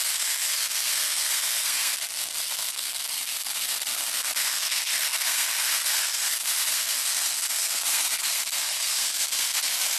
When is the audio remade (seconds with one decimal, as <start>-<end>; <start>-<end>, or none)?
0.0-10.0